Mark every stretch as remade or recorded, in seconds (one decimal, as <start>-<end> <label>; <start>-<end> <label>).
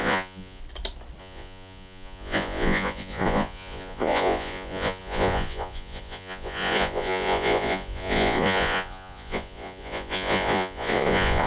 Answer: 0.0-0.6 remade; 0.6-1.2 recorded; 1.2-11.5 remade